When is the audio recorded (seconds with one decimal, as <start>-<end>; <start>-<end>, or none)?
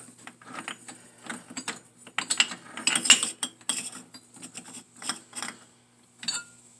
0.0-6.8